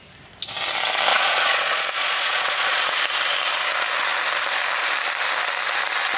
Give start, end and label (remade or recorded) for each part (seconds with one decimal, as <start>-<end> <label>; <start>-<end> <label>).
0.0-1.1 recorded; 1.1-3.0 remade; 3.0-6.2 recorded